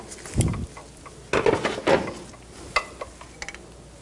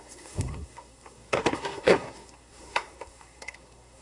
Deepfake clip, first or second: second